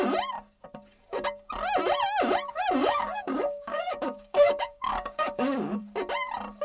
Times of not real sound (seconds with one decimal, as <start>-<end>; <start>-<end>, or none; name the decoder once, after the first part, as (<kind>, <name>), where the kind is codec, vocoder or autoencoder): 2.8-5.8 (codec, DAC)